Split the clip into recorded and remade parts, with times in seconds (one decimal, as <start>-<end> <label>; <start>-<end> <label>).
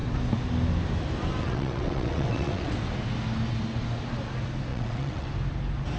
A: 0.0-1.4 recorded; 1.4-2.7 remade; 2.7-4.7 recorded; 4.7-5.3 remade; 5.3-6.0 recorded